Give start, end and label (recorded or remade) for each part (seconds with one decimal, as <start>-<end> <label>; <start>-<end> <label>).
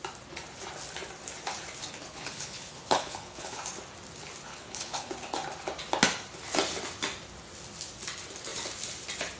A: 0.0-1.8 recorded; 1.8-3.6 remade; 3.6-4.5 recorded; 4.5-5.1 remade; 5.1-9.4 recorded